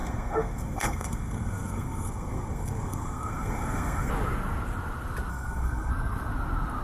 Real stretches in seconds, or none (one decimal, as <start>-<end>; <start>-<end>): 4.1-5.3; 5.9-6.8